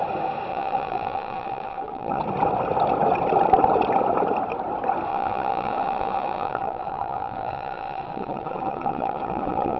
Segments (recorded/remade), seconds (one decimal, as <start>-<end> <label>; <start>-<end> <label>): 0.0-0.5 recorded; 0.5-2.2 remade; 2.2-5.1 recorded; 5.1-9.8 remade